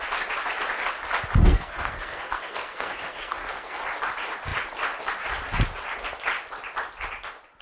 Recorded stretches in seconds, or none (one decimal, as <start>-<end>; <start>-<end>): 0.0-1.4; 3.8-7.6